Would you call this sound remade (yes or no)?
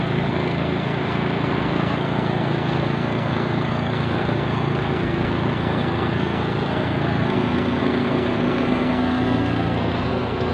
yes